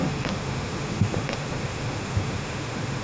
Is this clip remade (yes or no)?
yes